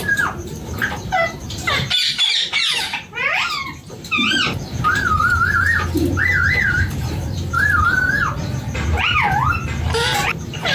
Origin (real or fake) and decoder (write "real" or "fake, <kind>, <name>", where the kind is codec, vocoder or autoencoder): fake, vocoder, BigVGAN v2